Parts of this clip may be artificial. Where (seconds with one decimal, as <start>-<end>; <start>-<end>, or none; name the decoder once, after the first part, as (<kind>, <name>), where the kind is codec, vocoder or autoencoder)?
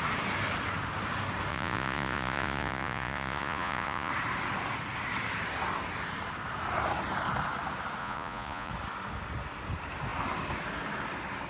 1.5-4.1 (vocoder, Vocos); 8.0-8.7